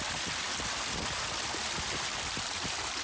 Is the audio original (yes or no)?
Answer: yes